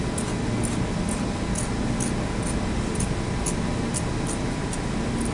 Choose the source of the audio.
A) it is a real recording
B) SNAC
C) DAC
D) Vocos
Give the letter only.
A